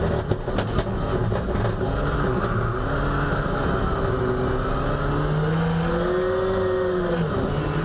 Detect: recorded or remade recorded